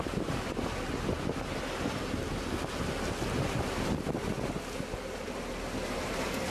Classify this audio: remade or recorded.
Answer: recorded